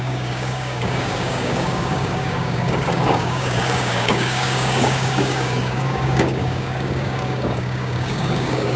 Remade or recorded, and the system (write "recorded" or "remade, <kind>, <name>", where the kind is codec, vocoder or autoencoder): remade, codec, DAC